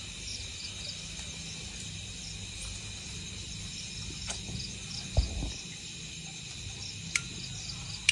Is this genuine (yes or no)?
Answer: yes